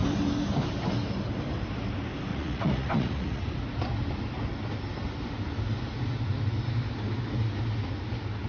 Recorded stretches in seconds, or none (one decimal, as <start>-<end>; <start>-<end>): 0.0-2.3; 3.4-8.5